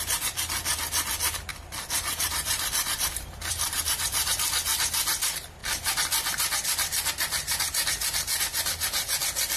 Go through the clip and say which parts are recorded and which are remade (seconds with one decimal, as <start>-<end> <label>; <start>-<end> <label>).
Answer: 0.0-1.5 recorded; 1.5-4.5 remade; 4.5-9.6 recorded